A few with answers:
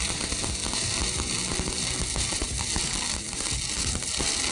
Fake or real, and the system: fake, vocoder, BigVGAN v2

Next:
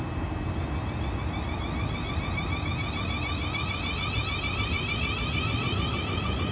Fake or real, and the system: real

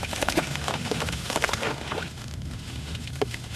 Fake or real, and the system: fake, autoencoder, DAC-VAE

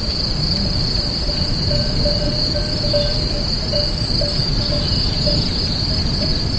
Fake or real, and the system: real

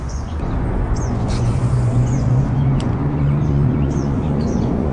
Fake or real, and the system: fake, vocoder, Vocos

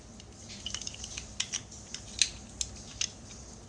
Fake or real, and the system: real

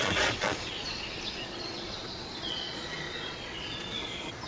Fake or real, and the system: fake, vocoder, Vocos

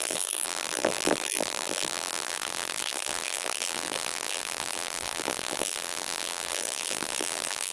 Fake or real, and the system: fake, vocoder, BigVGAN v2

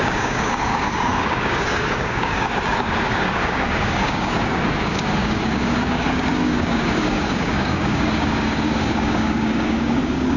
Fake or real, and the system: fake, codec, DAC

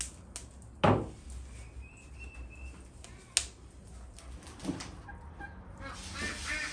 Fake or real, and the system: real